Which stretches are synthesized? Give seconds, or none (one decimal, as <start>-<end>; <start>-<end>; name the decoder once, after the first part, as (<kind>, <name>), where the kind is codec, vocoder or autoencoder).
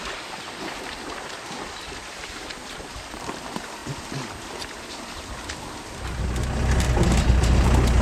none